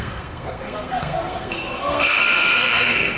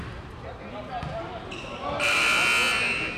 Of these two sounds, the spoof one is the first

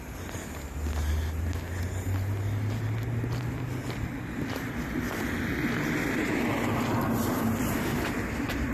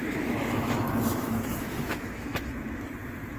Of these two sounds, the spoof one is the second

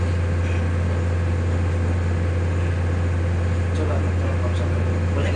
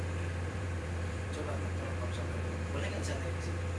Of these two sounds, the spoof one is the second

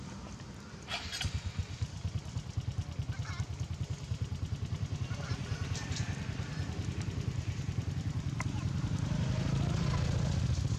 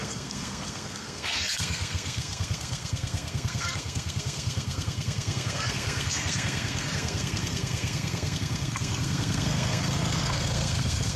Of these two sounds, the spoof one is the second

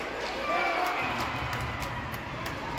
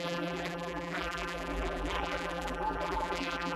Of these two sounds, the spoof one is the second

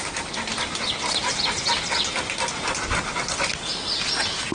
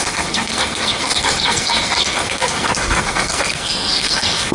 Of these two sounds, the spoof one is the second